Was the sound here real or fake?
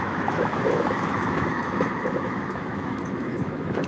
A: fake